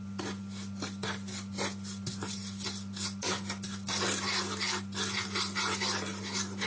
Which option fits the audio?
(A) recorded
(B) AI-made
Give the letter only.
A